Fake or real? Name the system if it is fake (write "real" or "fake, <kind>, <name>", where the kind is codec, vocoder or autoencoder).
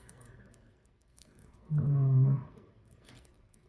fake, codec, SNAC